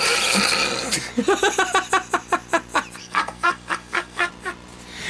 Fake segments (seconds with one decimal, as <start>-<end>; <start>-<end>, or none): 3.0-4.3